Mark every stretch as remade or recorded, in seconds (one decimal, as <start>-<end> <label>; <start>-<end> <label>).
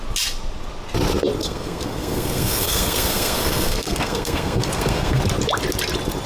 0.0-1.4 recorded; 1.4-5.2 remade; 5.2-6.3 recorded